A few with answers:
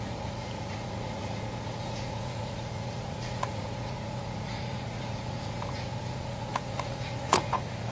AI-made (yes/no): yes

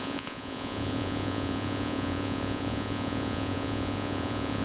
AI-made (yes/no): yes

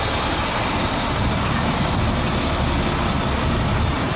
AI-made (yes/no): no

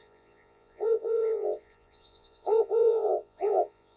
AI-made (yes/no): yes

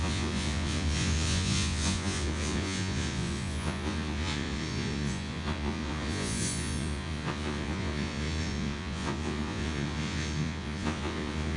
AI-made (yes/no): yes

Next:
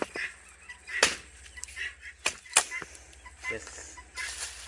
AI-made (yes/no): no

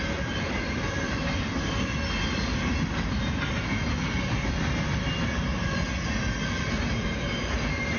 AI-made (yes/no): no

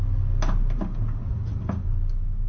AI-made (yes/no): no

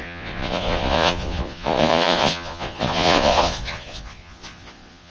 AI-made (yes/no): yes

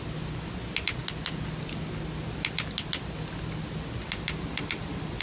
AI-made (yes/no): no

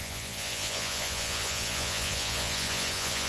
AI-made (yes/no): yes